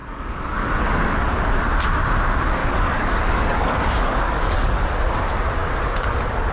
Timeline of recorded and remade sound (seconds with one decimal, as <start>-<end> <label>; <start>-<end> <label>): 0.0-0.7 remade; 0.7-2.6 recorded; 2.6-4.8 remade; 4.8-6.5 recorded